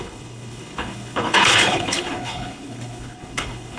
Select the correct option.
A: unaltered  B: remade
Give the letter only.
B